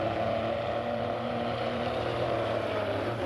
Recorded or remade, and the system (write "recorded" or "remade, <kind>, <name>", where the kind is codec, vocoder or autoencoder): remade, vocoder, BigVGAN v2